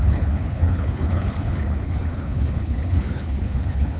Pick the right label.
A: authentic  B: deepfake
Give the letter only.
B